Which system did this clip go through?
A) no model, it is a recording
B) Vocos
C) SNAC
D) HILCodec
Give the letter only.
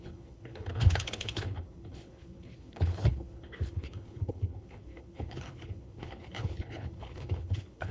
D